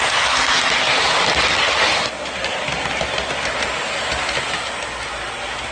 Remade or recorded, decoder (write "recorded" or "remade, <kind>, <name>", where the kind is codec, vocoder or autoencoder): recorded